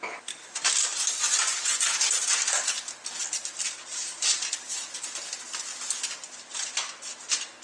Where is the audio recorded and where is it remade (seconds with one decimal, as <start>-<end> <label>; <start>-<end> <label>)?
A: 0.0-7.6 recorded